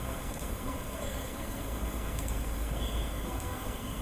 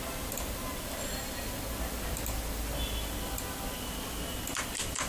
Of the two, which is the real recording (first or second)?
second